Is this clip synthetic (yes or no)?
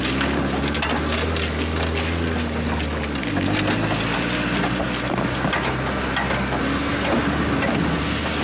no